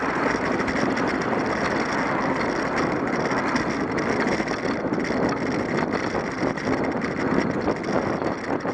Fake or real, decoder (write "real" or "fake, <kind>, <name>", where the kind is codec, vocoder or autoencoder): real